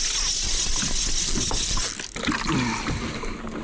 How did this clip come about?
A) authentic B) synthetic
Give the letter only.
A